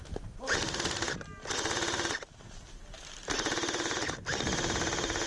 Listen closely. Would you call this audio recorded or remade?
recorded